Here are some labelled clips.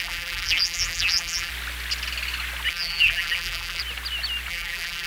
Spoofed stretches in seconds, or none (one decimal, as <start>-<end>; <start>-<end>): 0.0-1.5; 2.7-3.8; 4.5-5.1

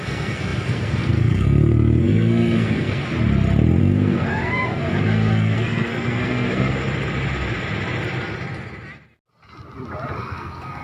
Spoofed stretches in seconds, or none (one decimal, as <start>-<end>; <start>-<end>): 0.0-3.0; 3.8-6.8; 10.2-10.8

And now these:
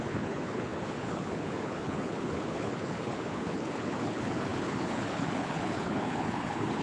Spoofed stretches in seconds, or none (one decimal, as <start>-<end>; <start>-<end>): 0.0-6.8